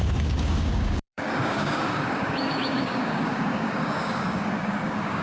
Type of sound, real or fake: fake